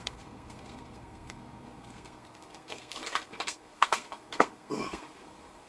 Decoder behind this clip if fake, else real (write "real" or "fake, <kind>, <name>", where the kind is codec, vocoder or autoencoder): fake, codec, SNAC